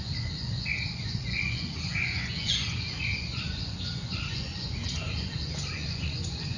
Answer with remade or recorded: remade